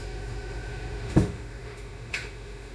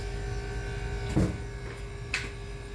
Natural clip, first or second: second